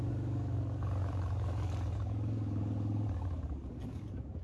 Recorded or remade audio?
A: remade